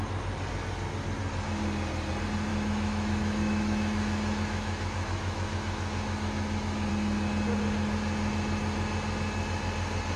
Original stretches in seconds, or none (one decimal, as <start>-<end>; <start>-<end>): 0.0-2.5; 6.9-10.2